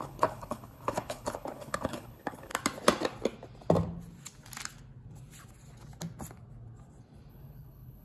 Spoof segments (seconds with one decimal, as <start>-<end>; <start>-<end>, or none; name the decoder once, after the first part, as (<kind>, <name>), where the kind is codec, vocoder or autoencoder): 0.0-2.5 (codec, HILCodec); 7.3-8.0